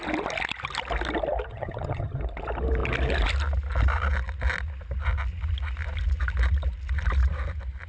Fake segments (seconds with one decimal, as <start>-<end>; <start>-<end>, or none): 1.5-2.2